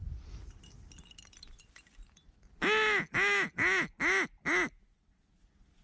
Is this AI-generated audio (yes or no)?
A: no